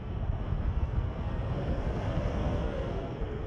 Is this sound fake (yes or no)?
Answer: yes